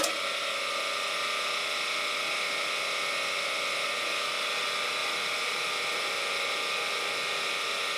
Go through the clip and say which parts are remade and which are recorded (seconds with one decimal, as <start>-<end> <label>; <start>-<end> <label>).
0.0-5.0 recorded; 5.0-6.2 remade; 6.2-8.0 recorded